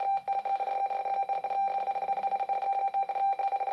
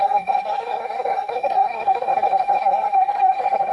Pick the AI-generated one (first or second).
second